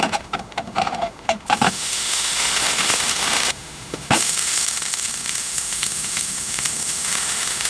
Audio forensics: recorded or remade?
remade